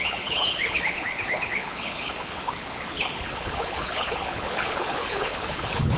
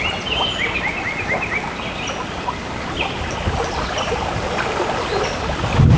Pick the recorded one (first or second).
second